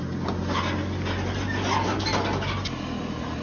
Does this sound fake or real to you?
real